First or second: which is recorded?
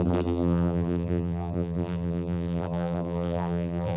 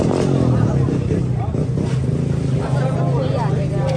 second